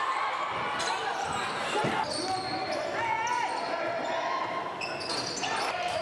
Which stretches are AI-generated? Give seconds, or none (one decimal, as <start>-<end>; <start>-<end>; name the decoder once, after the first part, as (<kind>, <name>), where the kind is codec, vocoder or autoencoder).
1.0-1.9 (vocoder, BigVGAN v2)